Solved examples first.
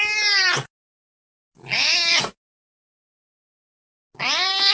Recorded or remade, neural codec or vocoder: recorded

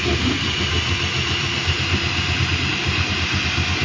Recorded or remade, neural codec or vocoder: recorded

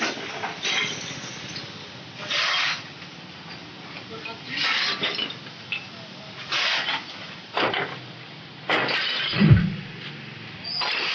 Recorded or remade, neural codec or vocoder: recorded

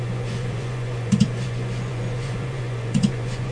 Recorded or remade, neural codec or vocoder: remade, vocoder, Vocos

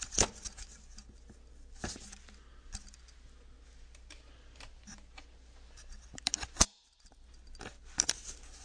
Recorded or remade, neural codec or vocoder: recorded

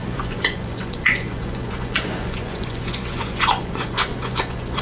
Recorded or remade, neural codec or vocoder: remade, vocoder, Vocos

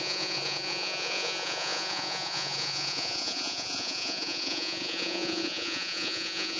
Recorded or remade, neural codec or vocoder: remade, vocoder, Vocos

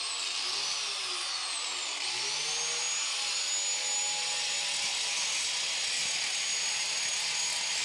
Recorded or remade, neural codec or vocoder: recorded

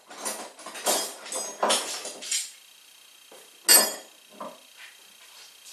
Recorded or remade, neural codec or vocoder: recorded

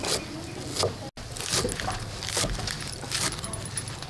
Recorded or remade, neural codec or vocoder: recorded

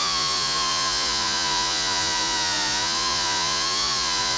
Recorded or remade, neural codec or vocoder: remade, vocoder, Vocos